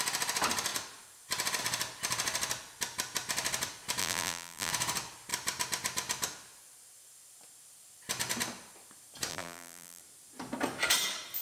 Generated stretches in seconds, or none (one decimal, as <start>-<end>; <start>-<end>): 4.0-4.7; 9.3-10.0